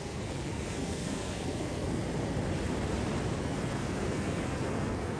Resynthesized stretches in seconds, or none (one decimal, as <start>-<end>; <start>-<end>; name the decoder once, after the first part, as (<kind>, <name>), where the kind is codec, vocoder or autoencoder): 0.0-2.0 (codec, SNAC); 3.4-5.2